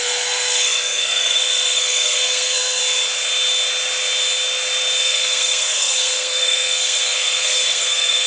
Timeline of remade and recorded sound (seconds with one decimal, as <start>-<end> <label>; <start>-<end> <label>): 0.0-2.8 remade; 2.8-5.0 recorded; 5.0-8.3 remade